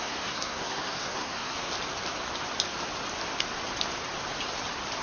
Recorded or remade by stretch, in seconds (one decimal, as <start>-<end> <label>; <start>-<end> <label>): 0.0-1.7 remade; 1.7-5.0 recorded